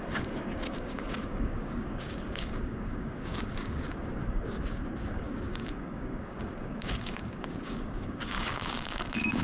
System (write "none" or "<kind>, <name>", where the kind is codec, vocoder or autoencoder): codec, DAC